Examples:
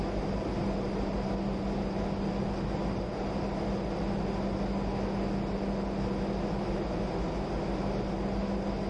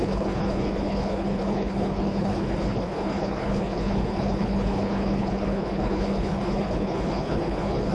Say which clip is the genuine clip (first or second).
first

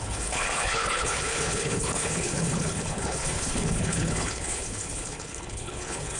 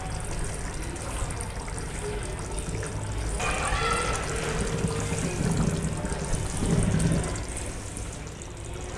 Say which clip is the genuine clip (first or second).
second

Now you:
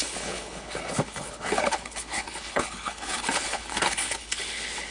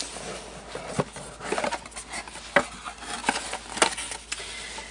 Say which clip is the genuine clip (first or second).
second